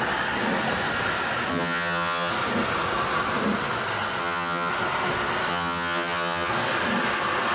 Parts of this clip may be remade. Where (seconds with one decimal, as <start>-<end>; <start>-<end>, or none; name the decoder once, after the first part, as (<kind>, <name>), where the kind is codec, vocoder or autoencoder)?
1.5-2.3 (vocoder, HiFi-GAN); 4.2-4.7; 5.5-6.5